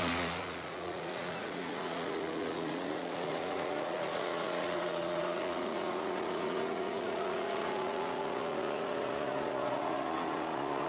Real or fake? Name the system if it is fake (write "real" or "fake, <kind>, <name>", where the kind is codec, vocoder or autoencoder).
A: fake, vocoder, Vocos